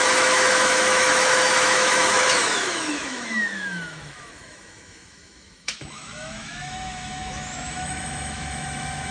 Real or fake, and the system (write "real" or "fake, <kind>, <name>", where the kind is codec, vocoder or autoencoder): fake, autoencoder, DAC-VAE